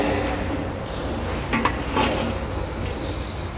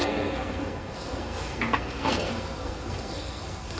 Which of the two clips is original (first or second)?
first